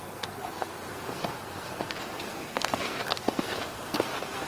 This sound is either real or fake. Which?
fake